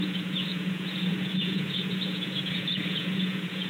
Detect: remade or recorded remade